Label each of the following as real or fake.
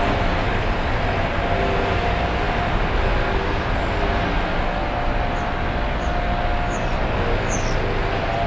real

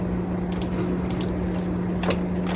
real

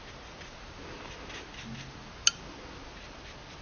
real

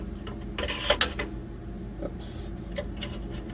real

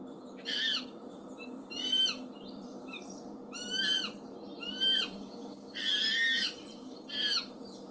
fake